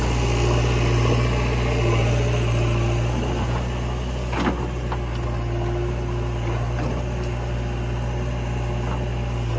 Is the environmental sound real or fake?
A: real